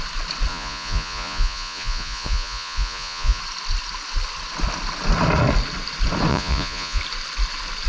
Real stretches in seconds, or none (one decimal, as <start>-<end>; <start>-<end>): 0.0-0.5; 3.4-6.3; 7.0-7.9